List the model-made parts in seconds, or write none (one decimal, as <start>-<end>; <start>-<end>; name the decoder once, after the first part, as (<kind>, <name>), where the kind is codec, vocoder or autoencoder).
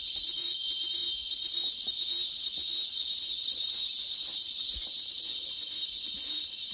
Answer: none